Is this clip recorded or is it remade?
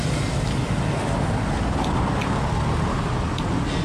recorded